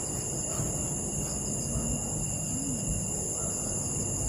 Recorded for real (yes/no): yes